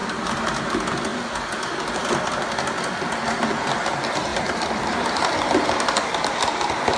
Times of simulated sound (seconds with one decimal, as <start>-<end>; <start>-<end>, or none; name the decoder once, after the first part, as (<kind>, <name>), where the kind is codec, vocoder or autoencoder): 0.0-0.7 (vocoder, BigVGAN v2); 4.3-7.0